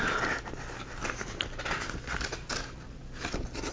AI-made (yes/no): no